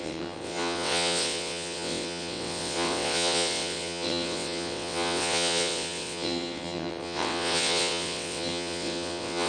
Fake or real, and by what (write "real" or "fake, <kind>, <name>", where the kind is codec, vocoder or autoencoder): fake, vocoder, WaveNeXt